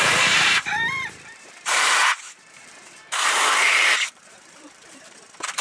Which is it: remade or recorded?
remade